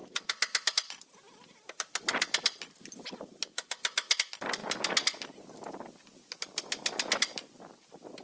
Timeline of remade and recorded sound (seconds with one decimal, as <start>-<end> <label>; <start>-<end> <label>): 0.0-8.2 recorded